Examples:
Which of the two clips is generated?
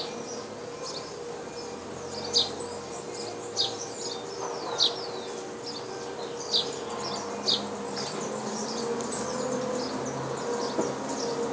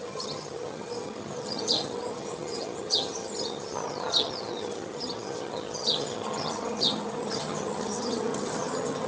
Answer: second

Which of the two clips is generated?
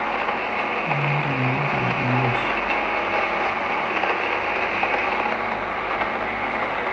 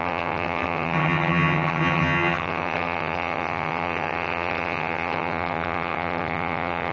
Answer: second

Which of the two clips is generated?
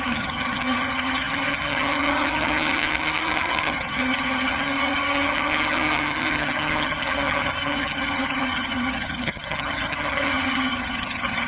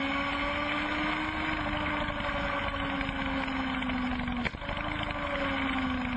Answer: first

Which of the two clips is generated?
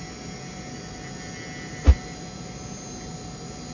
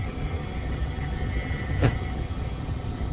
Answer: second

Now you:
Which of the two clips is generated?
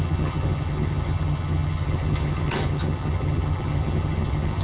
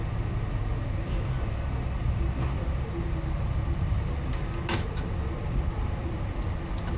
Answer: first